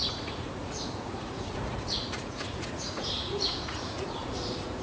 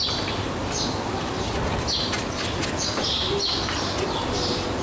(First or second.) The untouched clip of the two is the second